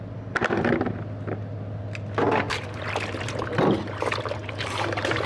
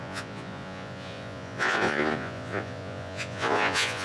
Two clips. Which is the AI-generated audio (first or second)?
second